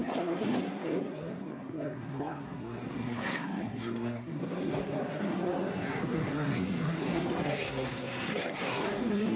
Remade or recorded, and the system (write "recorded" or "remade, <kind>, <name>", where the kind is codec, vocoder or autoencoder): remade, codec, SNAC